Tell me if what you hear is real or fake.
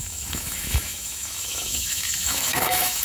fake